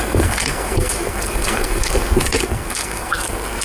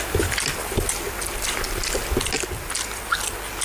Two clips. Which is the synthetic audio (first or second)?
first